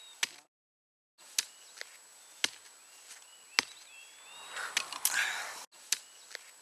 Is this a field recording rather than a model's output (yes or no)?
yes